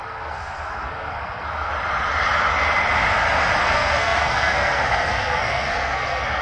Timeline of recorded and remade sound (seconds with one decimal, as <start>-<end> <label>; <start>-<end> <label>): 0.0-1.7 remade; 1.7-3.6 recorded; 3.6-6.4 remade